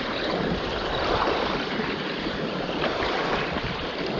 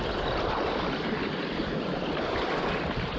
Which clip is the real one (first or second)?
second